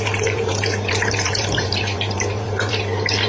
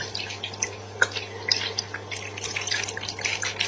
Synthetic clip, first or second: first